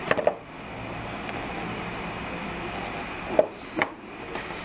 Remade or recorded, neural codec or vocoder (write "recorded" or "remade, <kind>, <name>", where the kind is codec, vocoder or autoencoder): recorded